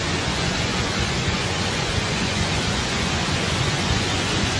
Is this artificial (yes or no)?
yes